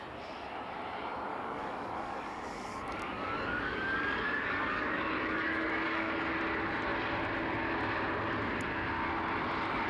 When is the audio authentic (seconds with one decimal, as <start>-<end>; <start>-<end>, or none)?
0.0-1.3; 6.3-9.9